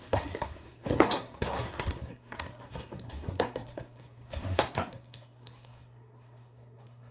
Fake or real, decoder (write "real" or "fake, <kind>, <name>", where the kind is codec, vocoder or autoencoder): fake, codec, SNAC